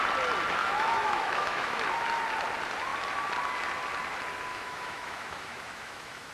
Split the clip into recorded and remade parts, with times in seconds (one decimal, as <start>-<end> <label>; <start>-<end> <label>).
0.0-0.6 recorded; 0.6-1.8 remade; 1.8-4.5 recorded; 4.5-6.3 remade

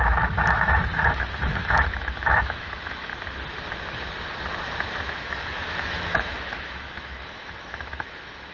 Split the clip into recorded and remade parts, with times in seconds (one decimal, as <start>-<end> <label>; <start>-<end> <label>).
0.0-3.1 remade; 3.1-5.1 recorded; 5.1-8.5 remade

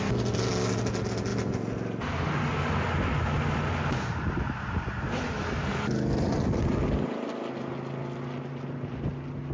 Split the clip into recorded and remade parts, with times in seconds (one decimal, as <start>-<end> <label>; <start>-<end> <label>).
0.0-9.5 recorded

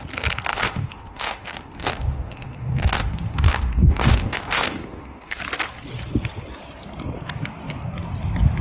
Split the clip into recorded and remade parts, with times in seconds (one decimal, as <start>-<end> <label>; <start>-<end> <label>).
0.0-0.5 recorded; 0.5-5.4 remade; 5.4-8.6 recorded

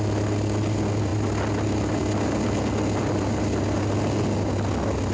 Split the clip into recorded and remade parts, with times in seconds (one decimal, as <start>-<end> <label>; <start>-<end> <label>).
0.0-5.1 recorded

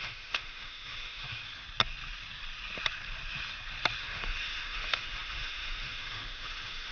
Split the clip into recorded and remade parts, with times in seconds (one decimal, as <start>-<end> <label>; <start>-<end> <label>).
0.0-1.4 remade; 1.4-4.0 recorded; 4.0-6.9 remade

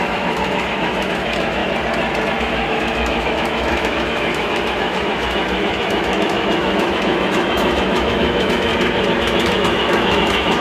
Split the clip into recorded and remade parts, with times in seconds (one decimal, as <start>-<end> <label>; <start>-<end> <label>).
0.0-1.6 remade; 1.6-2.4 recorded; 2.4-8.7 remade; 8.7-9.2 recorded; 9.2-10.6 remade